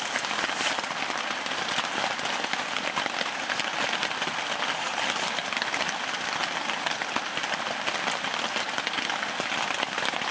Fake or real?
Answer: real